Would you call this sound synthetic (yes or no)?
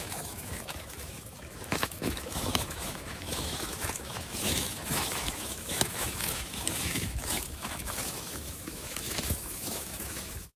yes